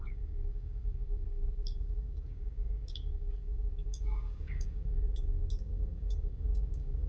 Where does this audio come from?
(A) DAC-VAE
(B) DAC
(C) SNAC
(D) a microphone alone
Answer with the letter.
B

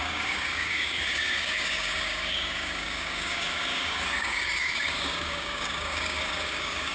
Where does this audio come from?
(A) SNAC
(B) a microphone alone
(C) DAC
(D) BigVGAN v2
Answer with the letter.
C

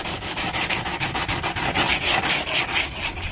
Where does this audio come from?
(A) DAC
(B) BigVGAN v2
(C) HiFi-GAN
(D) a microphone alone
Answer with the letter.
D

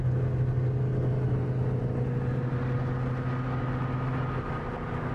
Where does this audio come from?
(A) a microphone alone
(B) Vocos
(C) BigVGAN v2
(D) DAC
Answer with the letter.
A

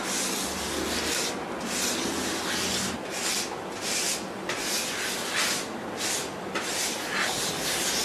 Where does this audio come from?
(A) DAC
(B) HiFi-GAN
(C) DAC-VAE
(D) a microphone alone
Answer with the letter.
D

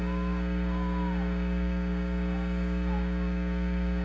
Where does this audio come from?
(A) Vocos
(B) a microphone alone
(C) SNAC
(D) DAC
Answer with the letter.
D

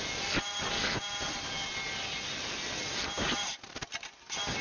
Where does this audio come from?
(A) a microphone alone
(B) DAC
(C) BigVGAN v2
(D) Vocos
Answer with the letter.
A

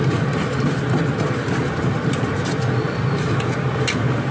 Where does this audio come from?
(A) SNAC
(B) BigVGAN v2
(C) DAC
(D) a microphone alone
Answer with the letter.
D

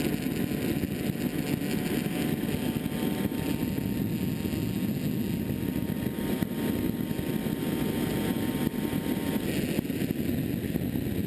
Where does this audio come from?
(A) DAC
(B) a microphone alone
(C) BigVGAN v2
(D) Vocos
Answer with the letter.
B